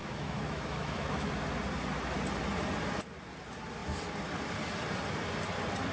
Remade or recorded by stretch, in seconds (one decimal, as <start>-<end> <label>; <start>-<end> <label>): 0.0-1.3 remade; 1.3-5.9 recorded